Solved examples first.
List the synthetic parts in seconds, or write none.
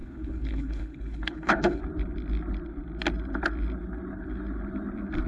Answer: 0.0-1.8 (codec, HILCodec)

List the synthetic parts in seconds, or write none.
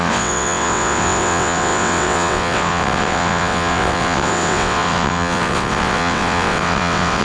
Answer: 0.0-7.2 (vocoder, WaveNeXt)